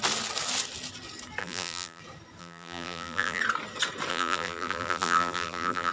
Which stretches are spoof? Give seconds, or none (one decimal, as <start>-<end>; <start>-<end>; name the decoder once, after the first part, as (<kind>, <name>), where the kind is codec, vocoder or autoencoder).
1.4-2.0 (vocoder, BigVGAN v2); 2.4-3.4; 4.1-5.9